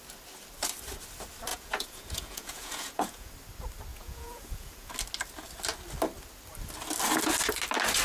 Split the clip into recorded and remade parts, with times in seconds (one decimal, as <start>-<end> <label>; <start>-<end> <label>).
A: 0.0-1.5 recorded; 1.5-3.3 remade; 3.3-3.9 recorded; 3.9-4.9 remade; 4.9-8.0 recorded